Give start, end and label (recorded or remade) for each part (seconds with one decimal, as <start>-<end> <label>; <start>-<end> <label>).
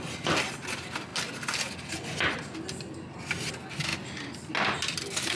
0.0-5.4 recorded